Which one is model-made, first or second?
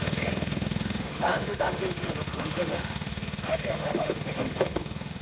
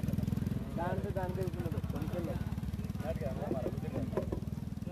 first